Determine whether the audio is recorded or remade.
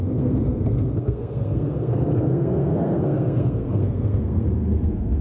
remade